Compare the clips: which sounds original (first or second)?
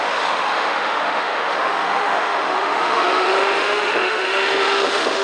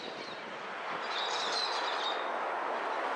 second